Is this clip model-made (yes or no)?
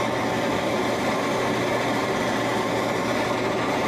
yes